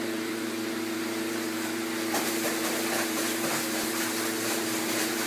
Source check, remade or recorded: remade